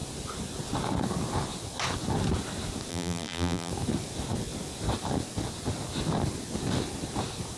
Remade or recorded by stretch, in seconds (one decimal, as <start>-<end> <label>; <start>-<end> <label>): 0.0-2.9 recorded; 2.9-3.7 remade; 3.7-7.6 recorded